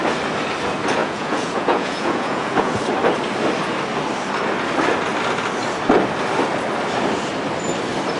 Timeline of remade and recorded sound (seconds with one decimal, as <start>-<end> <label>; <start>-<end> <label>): 0.0-1.0 recorded; 1.0-2.8 remade; 2.8-8.2 recorded

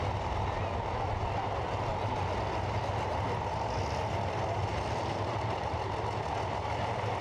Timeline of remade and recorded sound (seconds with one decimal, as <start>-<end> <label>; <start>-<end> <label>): 0.0-7.2 recorded